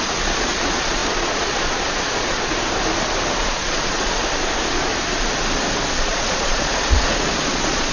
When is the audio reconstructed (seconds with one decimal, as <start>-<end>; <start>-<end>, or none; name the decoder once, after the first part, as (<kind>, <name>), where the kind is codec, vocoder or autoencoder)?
0.0-2.5 (vocoder, Vocos); 3.4-4.9; 5.9-7.9